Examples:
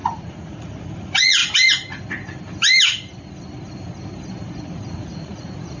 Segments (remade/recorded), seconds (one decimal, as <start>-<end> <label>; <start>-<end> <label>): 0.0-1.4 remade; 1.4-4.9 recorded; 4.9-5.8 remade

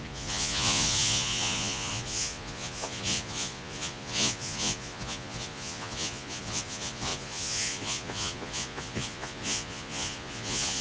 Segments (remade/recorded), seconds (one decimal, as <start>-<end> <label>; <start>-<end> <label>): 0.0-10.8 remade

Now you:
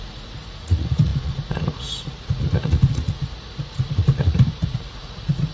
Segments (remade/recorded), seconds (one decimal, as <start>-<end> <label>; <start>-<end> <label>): 0.0-5.5 remade

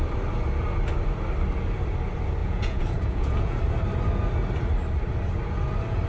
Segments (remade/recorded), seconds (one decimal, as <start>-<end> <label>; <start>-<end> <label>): 0.0-2.4 recorded; 2.4-3.6 remade; 3.6-6.1 recorded

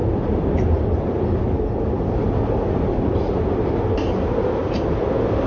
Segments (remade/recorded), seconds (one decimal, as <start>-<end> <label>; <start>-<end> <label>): 0.0-5.5 recorded